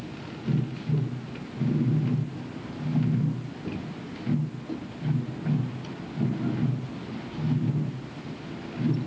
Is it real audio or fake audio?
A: real